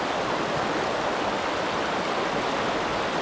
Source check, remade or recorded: recorded